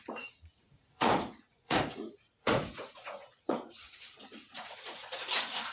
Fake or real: fake